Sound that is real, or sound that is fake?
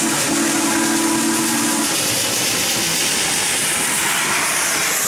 real